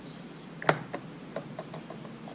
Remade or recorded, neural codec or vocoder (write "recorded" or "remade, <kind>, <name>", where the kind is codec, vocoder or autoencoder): recorded